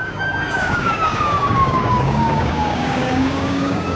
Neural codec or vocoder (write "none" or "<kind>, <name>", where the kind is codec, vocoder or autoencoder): codec, DAC